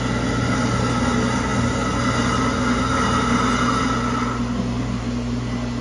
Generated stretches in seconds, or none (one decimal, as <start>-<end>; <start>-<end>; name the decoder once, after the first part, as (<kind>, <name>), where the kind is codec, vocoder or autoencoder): none